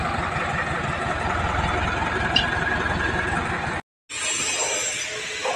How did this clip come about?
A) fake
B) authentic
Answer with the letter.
B